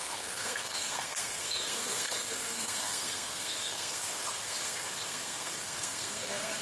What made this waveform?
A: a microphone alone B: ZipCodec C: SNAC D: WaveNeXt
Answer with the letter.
C